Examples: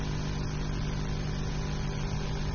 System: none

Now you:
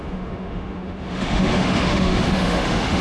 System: autoencoder, DAC-VAE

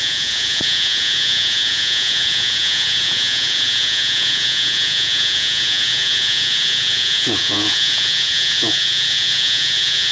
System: vocoder, Vocos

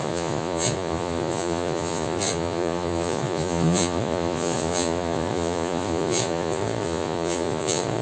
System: vocoder, Vocos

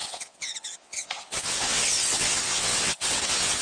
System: vocoder, WaveNeXt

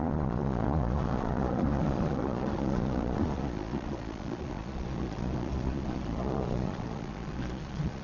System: vocoder, Vocos